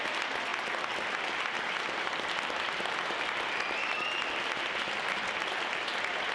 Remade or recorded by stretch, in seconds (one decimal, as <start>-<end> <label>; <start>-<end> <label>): 0.0-6.3 recorded